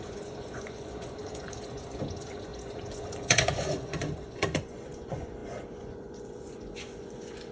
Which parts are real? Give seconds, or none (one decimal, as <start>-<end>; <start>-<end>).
none